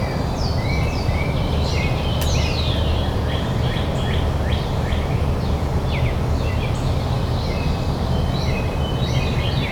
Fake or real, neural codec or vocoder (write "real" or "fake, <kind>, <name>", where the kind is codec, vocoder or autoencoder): real